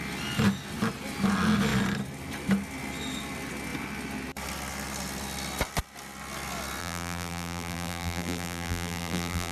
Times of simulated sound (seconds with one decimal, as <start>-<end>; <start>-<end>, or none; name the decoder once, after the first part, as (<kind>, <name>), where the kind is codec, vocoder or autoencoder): 6.8-9.5 (vocoder, BigVGAN v2)